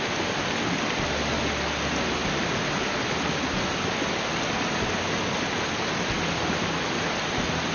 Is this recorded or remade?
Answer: recorded